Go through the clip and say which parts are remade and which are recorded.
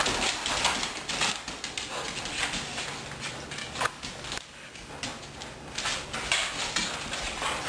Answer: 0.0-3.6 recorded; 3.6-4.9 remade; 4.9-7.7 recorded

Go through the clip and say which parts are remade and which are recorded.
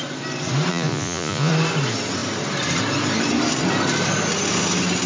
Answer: 0.0-0.7 recorded; 0.7-1.5 remade; 1.5-5.1 recorded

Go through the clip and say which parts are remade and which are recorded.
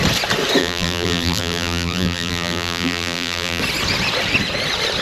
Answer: 0.0-0.6 recorded; 0.6-3.6 remade; 3.6-5.0 recorded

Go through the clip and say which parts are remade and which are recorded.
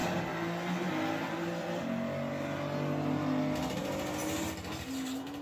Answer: 0.0-5.4 recorded